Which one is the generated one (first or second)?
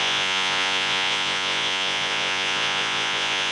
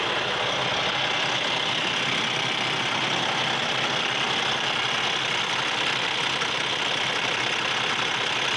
first